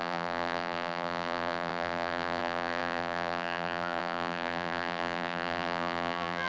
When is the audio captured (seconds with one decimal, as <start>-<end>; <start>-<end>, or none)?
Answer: none